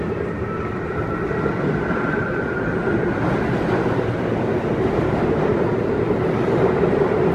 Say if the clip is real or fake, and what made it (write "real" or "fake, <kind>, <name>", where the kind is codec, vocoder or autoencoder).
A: real